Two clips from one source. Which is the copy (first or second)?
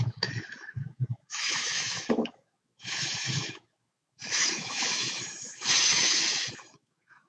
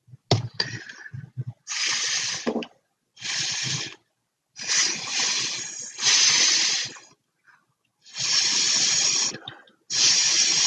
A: first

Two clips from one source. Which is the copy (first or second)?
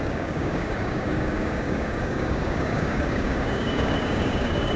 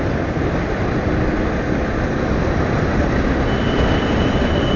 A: first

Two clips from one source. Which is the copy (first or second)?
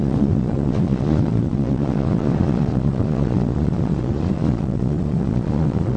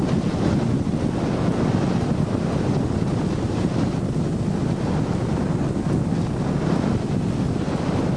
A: first